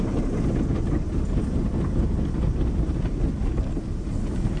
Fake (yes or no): no